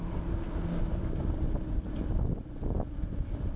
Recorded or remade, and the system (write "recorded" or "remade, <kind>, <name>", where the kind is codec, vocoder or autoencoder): recorded